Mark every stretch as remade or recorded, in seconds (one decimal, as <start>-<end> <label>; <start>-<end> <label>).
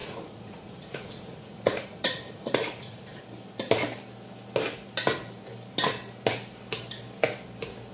0.0-3.2 remade; 3.2-7.9 recorded